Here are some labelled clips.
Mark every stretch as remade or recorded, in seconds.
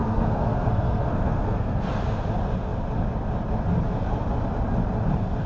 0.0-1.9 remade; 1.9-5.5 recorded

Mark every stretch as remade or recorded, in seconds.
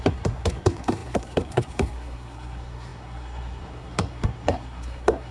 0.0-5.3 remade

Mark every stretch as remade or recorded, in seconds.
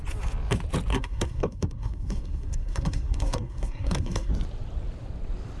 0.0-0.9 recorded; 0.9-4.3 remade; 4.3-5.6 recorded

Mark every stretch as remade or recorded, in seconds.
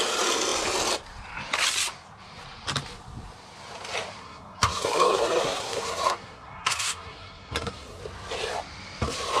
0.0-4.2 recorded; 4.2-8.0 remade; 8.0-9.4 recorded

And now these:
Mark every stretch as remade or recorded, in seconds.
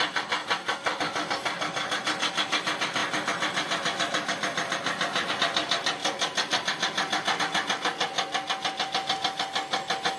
0.0-10.2 recorded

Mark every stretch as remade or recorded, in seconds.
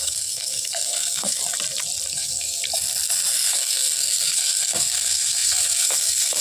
0.0-1.4 remade; 1.4-2.1 recorded; 2.1-2.6 remade; 2.6-3.3 recorded; 3.3-6.4 remade